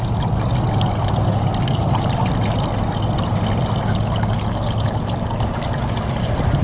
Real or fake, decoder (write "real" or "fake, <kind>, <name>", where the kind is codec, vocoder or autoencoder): real